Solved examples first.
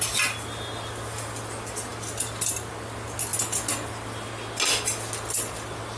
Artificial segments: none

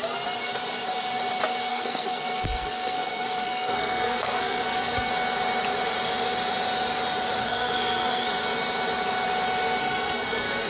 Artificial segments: 1.7-5.1 (codec, SNAC); 7.4-8.3; 9.8-10.7

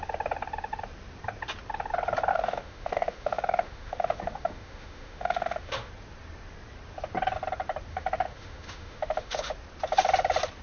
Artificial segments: 2.3-5.9 (autoencoder, DAC-VAE); 7.9-9.5

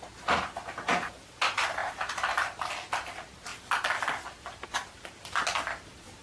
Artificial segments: 1.8-2.6 (vocoder, BigVGAN v2)

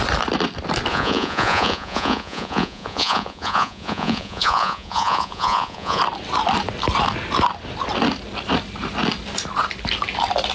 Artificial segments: 0.9-6.0 (vocoder, Vocos)

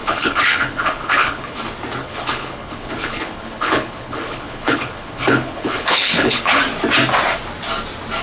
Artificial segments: 0.0-1.6 (codec, HILCodec); 2.0-6.6

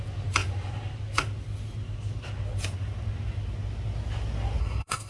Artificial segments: 4.6-5.1 (codec, SNAC)